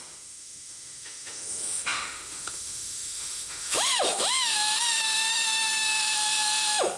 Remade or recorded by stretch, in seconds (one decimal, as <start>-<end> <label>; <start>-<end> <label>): 0.0-7.0 remade